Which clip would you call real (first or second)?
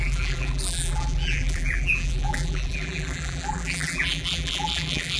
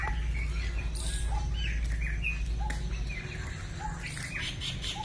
second